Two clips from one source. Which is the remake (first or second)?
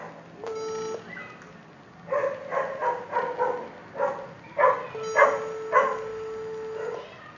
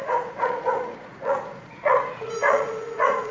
second